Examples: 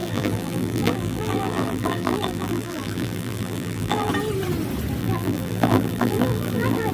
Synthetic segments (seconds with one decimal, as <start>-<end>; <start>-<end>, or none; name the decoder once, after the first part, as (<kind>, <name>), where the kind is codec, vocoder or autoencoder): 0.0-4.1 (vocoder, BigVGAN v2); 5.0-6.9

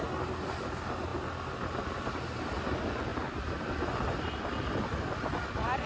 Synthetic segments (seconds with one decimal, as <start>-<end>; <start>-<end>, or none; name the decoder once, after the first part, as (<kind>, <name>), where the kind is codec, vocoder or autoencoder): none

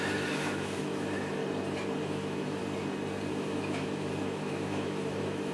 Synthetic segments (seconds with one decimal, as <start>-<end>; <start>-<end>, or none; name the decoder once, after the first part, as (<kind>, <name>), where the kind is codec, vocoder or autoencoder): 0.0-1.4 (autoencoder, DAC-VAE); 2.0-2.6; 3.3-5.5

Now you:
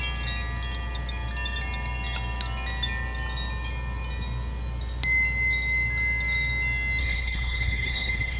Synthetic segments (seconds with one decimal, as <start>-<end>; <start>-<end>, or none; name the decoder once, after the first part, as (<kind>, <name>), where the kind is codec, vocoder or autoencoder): 7.0-8.4 (codec, HILCodec)